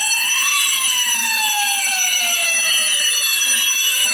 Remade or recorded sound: remade